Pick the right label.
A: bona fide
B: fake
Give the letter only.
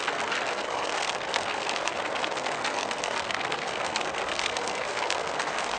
B